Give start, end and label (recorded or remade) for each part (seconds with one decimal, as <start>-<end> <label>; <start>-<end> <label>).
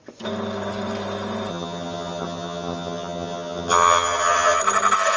0.0-1.5 recorded; 1.5-4.6 remade; 4.6-5.2 recorded